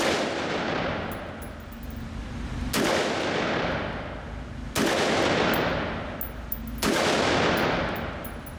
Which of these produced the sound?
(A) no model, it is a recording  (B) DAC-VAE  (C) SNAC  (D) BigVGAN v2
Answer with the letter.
A